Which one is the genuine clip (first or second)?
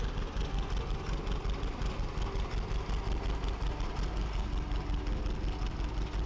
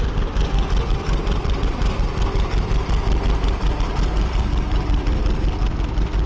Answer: first